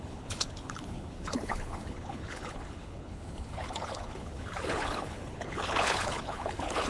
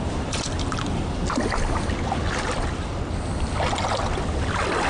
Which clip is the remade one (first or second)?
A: first